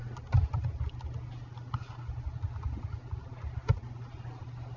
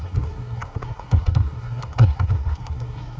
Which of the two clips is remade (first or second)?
second